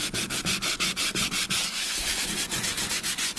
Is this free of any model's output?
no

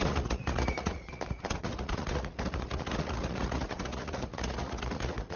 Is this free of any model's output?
no